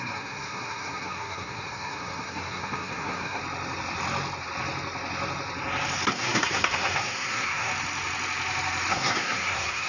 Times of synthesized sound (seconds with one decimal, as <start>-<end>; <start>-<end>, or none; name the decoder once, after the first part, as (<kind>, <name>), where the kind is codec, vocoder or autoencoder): 0.0-3.4 (codec, SNAC); 6.1-7.7; 8.9-9.9